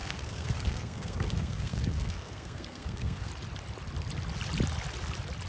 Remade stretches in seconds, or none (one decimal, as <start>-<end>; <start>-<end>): 0.0-3.3